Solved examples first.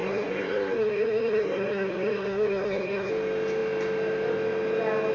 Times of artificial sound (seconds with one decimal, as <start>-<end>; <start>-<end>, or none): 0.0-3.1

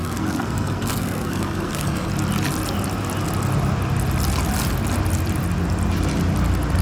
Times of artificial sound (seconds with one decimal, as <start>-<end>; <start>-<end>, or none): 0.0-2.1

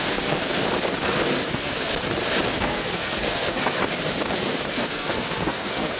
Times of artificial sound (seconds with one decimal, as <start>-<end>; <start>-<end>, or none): 0.0-0.4; 1.5-1.9; 2.5-3.8; 4.7-6.0

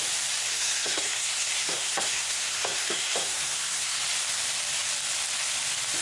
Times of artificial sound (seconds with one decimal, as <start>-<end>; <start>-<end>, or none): 0.4-4.0

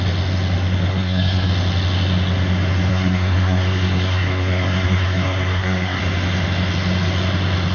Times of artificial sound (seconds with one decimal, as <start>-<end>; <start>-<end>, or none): 0.9-1.5; 2.9-6.0

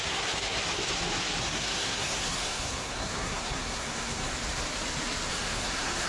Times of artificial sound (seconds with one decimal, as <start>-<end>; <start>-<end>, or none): 0.0-0.6; 1.4-4.3; 5.3-6.1

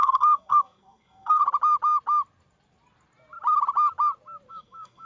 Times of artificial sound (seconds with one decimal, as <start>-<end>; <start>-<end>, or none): 0.0-1.4; 4.5-5.1

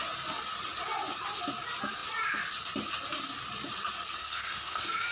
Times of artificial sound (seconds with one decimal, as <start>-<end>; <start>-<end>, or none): 4.2-5.1